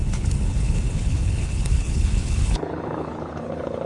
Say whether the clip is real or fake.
fake